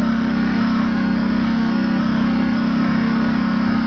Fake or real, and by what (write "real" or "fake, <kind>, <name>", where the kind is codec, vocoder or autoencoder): fake, codec, SNAC